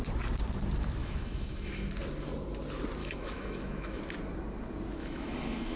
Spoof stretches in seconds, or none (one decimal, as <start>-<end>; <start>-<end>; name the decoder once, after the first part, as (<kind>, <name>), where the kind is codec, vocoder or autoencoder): 1.0-1.9 (autoencoder, DAC-VAE); 3.0-4.0; 5.0-5.8